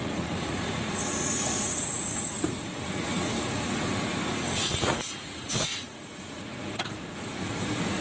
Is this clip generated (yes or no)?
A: yes